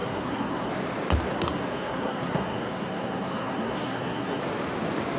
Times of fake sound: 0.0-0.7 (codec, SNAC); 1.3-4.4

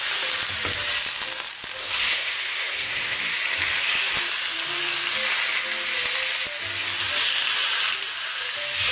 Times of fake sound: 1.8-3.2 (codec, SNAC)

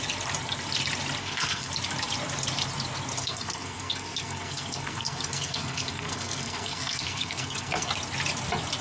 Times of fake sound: 1.2-1.7 (codec, SNAC); 3.2-7.9